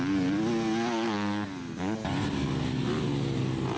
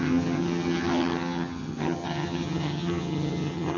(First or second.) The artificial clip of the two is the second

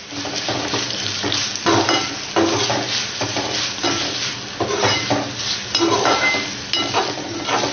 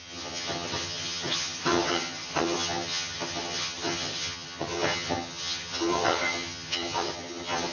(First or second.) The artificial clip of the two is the second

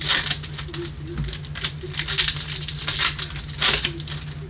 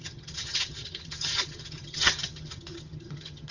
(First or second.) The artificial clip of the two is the second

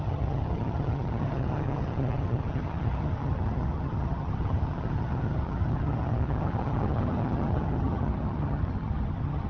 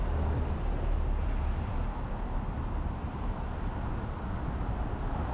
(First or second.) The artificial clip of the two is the first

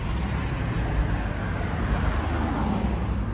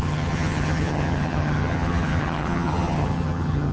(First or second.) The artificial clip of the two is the second